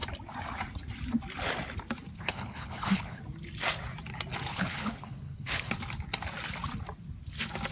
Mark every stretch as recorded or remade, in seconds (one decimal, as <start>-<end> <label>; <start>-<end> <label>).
0.0-2.1 recorded; 2.1-3.2 remade; 3.2-4.5 recorded; 4.5-5.7 remade; 5.7-7.7 recorded